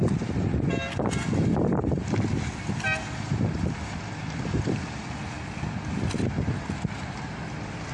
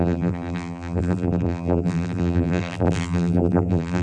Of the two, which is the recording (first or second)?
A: first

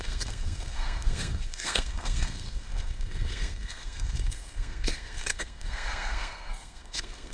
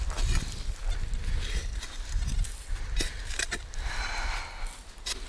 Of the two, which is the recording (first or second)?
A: second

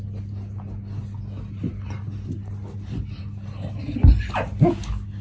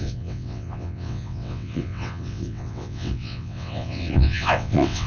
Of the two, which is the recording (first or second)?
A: first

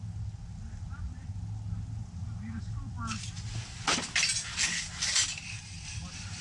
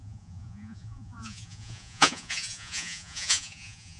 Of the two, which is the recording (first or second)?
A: first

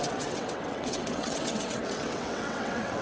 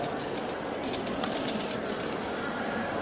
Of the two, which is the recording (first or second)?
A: second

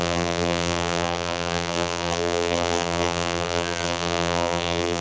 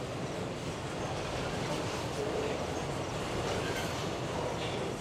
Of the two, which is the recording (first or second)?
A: second